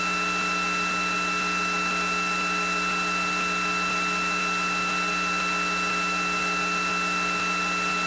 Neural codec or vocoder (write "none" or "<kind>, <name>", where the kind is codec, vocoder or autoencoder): none